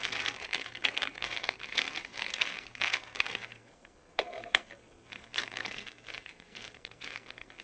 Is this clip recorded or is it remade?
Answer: remade